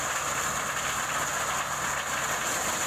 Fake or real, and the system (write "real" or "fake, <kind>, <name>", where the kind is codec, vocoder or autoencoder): real